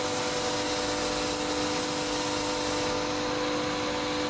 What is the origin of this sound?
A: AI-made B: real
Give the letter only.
B